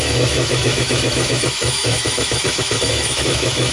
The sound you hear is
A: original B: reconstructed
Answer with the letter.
B